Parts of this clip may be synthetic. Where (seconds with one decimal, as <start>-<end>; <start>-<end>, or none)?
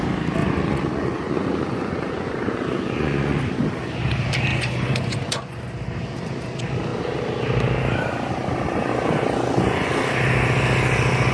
0.4-3.4; 4.5-5.7; 8.9-9.9